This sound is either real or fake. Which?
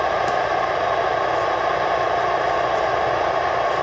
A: real